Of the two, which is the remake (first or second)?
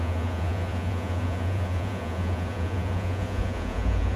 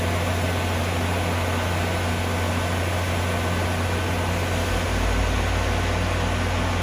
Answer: first